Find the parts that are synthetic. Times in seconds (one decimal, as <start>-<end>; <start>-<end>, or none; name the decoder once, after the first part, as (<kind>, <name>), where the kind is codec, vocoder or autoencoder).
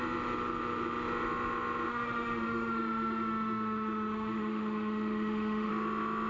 1.9-5.7 (autoencoder, DAC-VAE)